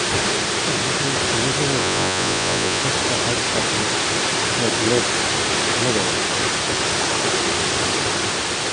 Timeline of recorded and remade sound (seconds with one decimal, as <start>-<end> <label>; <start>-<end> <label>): 0.0-1.8 recorded; 1.8-2.8 remade; 2.8-8.7 recorded